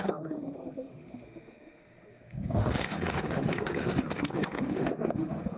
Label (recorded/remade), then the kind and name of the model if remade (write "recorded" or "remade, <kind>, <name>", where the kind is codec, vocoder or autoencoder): remade, autoencoder, DAC-VAE